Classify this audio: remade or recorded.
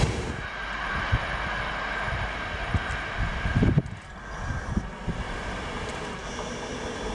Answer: recorded